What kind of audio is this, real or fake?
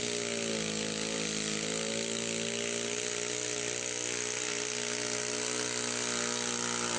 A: real